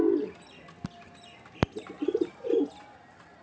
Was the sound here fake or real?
real